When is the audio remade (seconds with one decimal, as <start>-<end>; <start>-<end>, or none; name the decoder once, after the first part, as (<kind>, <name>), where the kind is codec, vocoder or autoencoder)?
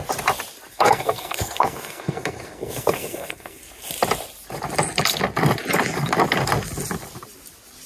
0.7-3.6 (codec, SNAC)